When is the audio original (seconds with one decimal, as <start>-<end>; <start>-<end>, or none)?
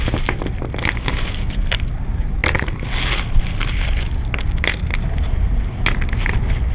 0.0-6.7